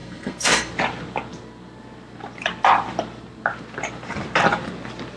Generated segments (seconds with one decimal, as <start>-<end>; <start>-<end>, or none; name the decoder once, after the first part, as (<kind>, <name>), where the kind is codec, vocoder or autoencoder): 0.0-0.7 (codec, SNAC)